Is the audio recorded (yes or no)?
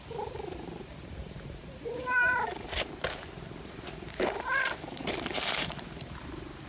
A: no